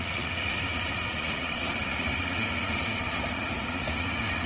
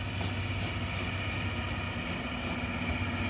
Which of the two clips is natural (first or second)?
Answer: second